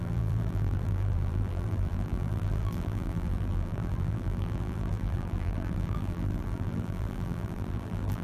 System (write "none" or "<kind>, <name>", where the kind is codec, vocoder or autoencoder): vocoder, BigVGAN v2